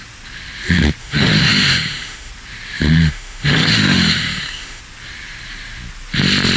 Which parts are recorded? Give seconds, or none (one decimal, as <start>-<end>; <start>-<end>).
0.0-1.0; 2.3-3.0; 4.8-6.6